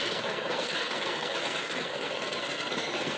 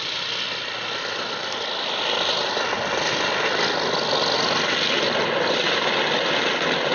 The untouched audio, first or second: second